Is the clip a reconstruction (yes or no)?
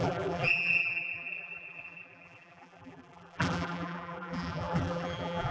yes